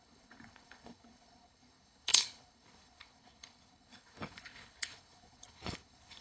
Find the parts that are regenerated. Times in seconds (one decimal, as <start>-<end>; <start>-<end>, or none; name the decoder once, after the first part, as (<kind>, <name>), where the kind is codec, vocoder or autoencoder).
0.0-6.2 (codec, HILCodec)